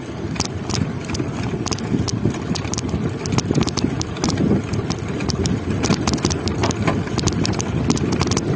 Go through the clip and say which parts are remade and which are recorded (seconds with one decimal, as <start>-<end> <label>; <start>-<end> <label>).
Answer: 0.0-2.1 remade; 2.1-2.7 recorded; 2.7-8.6 remade